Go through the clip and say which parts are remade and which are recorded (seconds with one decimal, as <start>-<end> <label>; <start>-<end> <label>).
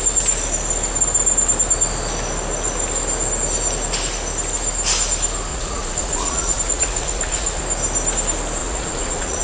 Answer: 0.0-5.5 recorded; 5.5-7.6 remade; 7.6-8.6 recorded; 8.6-9.4 remade